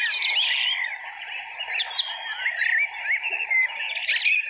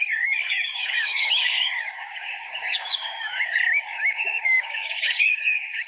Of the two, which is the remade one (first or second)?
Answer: second